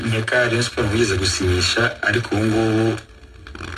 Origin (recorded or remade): recorded